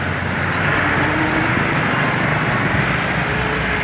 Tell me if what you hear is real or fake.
real